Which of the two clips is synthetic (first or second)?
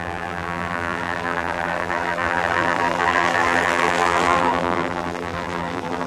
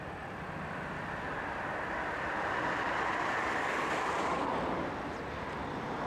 first